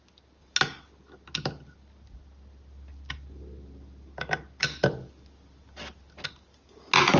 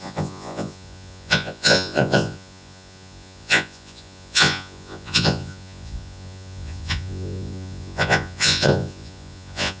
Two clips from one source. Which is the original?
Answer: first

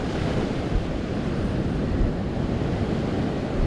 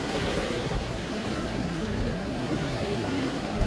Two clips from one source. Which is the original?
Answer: first